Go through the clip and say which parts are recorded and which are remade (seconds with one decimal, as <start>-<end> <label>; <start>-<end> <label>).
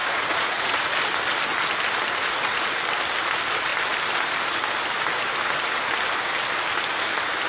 0.0-0.9 remade; 0.9-2.2 recorded; 2.2-2.8 remade; 2.8-7.5 recorded